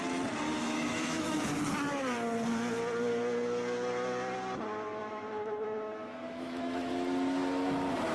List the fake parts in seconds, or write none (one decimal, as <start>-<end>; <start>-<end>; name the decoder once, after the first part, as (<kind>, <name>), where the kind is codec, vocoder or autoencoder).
0.6-1.5 (autoencoder, DAC-VAE); 5.0-6.9